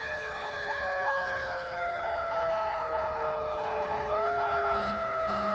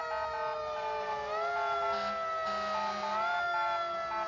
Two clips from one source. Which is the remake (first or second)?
first